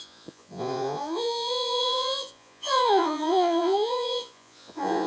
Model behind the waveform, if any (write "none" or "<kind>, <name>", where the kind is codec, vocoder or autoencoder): vocoder, Vocos